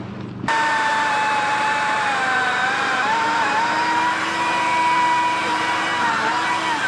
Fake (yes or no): yes